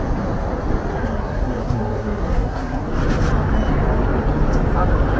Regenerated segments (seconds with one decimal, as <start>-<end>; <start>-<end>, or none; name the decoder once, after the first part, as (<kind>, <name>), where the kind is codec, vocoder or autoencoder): 1.0-2.8 (codec, SNAC)